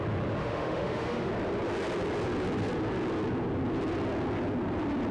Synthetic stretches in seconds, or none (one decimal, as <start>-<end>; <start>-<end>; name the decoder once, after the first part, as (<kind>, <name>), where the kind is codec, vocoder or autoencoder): 0.4-1.3 (autoencoder, DAC-VAE)